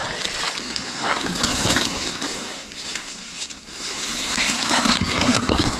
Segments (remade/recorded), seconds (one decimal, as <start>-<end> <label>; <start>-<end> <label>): 0.0-0.6 recorded; 0.6-5.8 remade